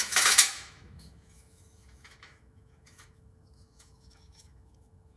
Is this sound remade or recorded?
remade